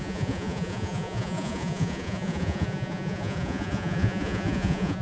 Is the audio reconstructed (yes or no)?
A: yes